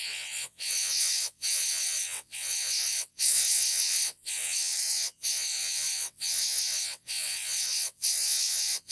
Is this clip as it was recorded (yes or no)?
no